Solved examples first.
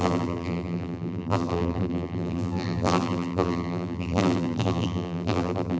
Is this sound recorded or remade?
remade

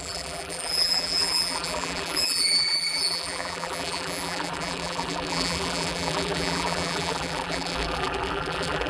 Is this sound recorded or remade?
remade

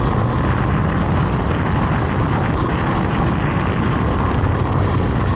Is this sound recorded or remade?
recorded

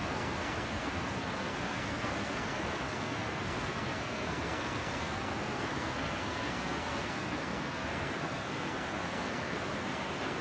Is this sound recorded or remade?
remade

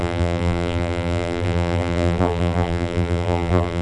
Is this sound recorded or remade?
remade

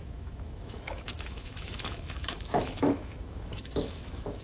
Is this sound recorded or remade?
remade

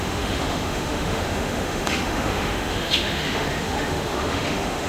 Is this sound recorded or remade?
remade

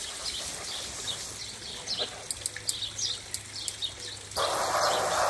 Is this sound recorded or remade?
recorded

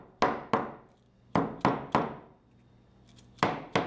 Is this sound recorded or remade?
recorded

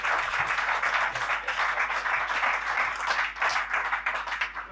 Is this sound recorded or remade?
recorded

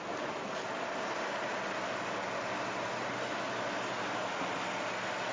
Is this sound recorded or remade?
recorded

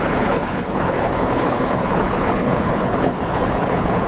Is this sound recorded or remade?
remade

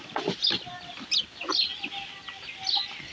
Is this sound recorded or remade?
recorded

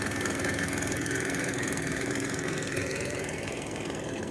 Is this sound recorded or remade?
remade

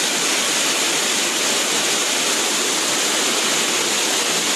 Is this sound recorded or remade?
recorded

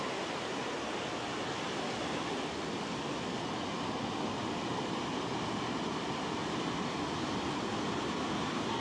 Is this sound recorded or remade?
recorded